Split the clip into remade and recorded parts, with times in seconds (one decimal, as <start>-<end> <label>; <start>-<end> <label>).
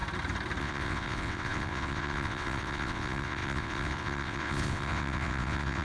0.0-0.6 recorded; 0.6-5.8 remade